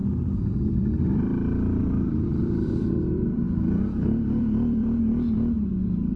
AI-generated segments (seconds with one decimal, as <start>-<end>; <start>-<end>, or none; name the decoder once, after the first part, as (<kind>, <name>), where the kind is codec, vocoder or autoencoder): 1.3-5.0 (vocoder, BigVGAN v2)